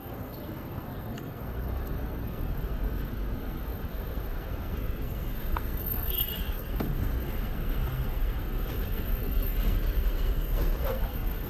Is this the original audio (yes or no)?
no